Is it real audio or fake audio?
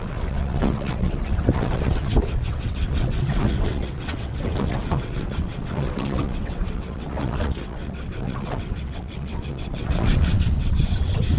fake